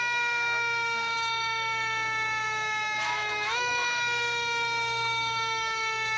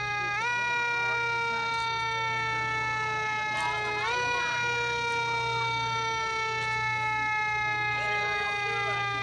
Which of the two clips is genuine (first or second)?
second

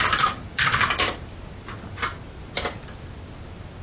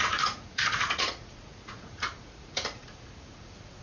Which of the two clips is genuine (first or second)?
first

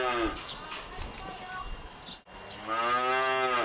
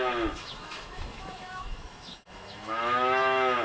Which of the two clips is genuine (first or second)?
first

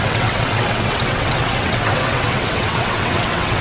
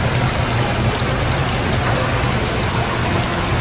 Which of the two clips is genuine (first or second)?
second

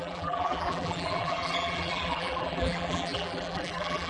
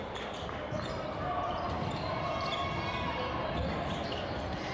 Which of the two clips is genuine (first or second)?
second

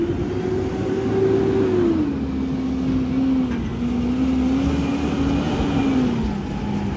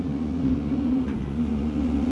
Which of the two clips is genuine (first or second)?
first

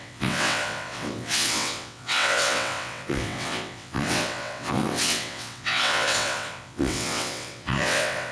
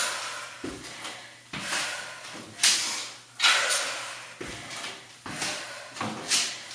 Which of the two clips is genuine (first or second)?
second